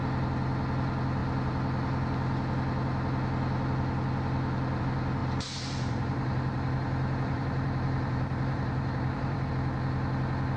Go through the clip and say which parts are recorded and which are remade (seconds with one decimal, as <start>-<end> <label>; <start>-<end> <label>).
0.0-5.2 recorded; 5.2-9.5 remade; 9.5-10.6 recorded